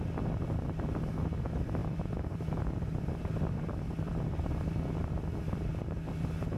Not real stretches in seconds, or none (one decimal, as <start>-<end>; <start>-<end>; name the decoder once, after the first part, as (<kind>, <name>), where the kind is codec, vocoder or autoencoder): 1.8-5.8 (vocoder, BigVGAN v2)